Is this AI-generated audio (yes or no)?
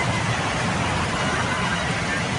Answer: no